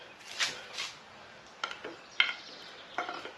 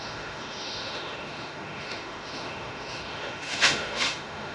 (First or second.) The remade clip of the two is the second